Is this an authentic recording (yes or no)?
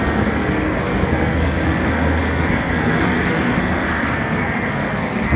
no